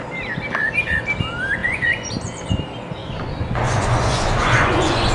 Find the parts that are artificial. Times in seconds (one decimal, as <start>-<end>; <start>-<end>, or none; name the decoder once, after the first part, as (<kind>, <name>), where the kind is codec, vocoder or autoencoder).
1.6-2.1 (vocoder, Vocos); 3.0-5.1